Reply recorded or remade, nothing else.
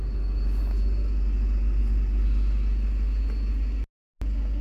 recorded